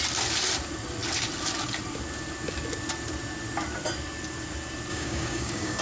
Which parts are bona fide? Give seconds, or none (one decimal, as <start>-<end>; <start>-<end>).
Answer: 0.0-4.9